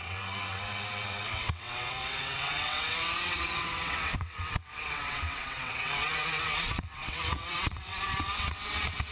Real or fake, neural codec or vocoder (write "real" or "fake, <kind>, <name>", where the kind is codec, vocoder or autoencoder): fake, vocoder, WaveNeXt